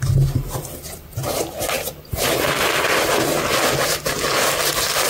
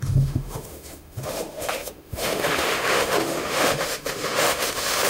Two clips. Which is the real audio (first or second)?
first